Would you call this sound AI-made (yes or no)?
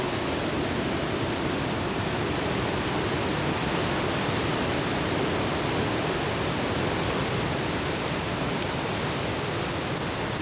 no